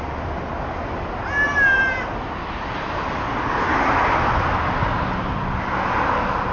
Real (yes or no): yes